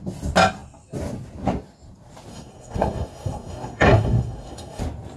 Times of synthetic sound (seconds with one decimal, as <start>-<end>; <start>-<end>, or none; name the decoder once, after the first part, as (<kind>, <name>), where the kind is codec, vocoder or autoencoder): 2.3-4.8 (codec, SNAC)

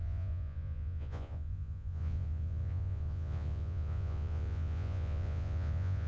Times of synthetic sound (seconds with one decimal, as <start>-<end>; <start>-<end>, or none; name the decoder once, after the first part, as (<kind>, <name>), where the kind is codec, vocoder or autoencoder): 0.0-6.1 (vocoder, Vocos)

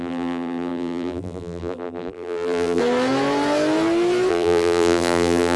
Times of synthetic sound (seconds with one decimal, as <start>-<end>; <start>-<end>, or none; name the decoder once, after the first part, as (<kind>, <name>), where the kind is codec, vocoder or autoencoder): 0.0-2.8 (vocoder, BigVGAN v2); 4.3-5.6

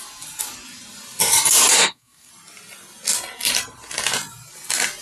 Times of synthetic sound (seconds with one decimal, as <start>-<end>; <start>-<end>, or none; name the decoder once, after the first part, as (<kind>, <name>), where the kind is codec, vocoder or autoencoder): 1.8-2.3 (codec, SNAC)

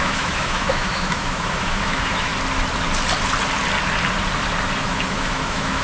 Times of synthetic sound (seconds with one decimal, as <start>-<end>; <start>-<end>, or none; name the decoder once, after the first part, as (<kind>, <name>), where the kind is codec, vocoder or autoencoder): 0.0-2.3 (autoencoder, DAC-VAE); 4.8-5.8

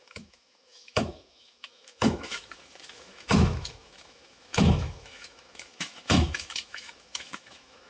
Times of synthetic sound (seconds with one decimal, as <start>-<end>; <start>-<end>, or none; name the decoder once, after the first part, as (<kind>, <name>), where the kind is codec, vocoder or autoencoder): 0.0-7.9 (autoencoder, DAC-VAE)

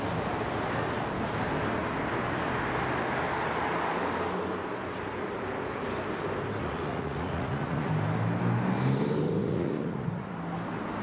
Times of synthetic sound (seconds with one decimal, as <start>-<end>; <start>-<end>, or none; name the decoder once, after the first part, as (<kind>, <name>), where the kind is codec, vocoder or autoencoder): 6.6-7.9 (vocoder, Vocos); 9.4-10.3